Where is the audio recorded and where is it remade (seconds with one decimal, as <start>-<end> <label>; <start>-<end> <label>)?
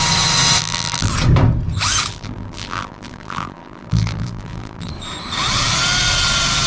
0.0-0.6 recorded; 0.6-1.1 remade; 1.1-2.1 recorded; 2.1-4.9 remade; 4.9-6.7 recorded